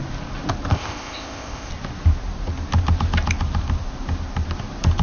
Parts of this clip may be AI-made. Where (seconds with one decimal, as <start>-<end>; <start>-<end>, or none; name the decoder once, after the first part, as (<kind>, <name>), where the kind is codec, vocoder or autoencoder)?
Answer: 0.7-1.7 (codec, ZipCodec)